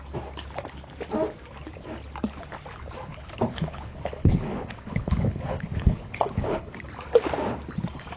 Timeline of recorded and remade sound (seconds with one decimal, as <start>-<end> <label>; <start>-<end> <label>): 0.0-3.1 recorded; 3.1-6.7 remade; 6.7-8.2 recorded